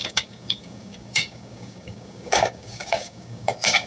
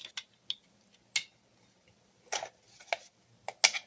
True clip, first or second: second